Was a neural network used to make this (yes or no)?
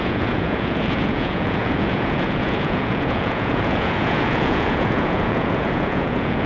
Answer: yes